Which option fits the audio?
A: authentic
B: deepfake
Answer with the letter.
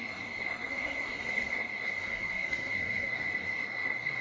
B